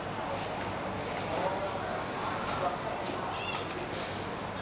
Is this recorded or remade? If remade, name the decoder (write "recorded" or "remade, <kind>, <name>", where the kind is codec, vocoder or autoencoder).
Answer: recorded